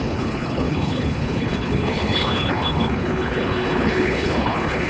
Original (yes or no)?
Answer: no